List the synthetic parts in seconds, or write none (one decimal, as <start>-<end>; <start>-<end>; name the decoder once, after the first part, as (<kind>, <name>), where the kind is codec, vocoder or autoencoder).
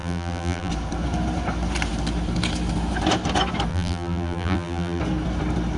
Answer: 0.0-0.7 (vocoder, BigVGAN v2); 3.7-5.0